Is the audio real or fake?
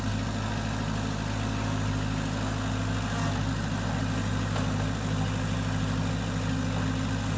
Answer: real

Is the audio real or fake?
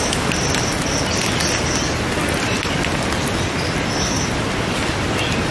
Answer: real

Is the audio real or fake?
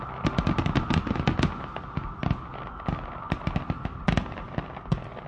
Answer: real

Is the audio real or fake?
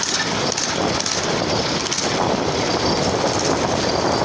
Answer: real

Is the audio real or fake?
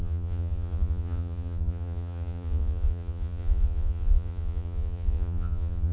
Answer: fake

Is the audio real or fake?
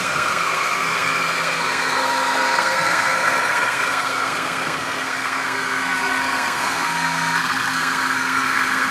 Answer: fake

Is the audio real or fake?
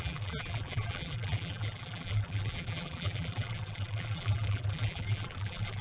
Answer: fake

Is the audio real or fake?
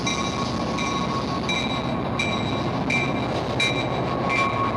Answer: real